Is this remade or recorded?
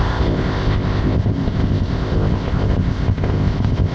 remade